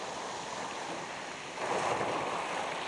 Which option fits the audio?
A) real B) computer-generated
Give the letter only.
A